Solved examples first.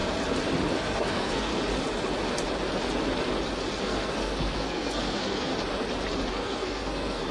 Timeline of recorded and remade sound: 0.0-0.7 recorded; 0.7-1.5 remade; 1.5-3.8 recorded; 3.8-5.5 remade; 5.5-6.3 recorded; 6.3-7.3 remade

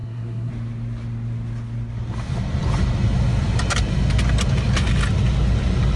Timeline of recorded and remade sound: 0.0-0.5 remade; 0.5-6.0 recorded

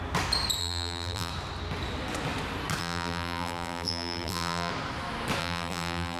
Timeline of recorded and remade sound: 0.0-0.6 recorded; 0.6-1.3 remade; 1.3-2.8 recorded; 2.8-4.7 remade; 4.7-5.4 recorded; 5.4-6.2 remade

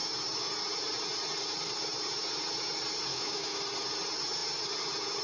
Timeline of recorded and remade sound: 0.0-3.1 recorded; 3.1-3.6 remade; 3.6-5.2 recorded